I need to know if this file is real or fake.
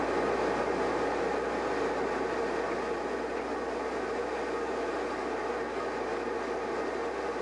real